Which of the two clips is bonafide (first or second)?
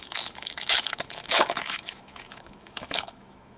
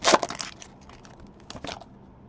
second